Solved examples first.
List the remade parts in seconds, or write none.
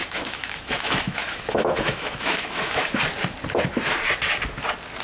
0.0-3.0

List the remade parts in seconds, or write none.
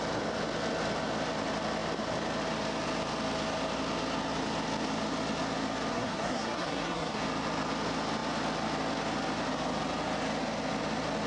5.9-7.2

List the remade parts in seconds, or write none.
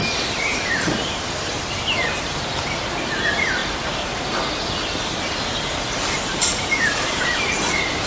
0.0-3.6; 6.1-8.1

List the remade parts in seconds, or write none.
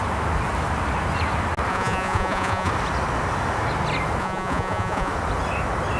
1.7-2.7; 4.2-5.1